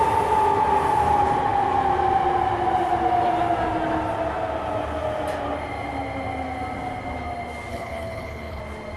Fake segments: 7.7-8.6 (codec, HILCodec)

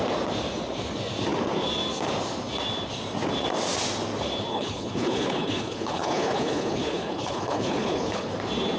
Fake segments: 4.5-8.3 (codec, HILCodec)

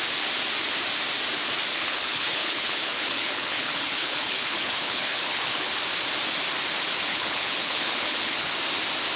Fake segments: 1.7-5.7 (codec, HILCodec); 7.1-8.5

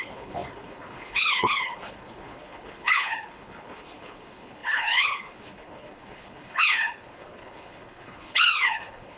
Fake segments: 0.0-9.2 (codec, HILCodec)